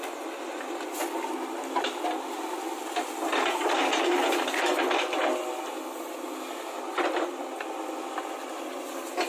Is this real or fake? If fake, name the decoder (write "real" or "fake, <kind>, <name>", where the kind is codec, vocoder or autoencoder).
real